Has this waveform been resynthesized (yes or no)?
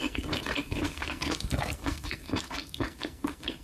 yes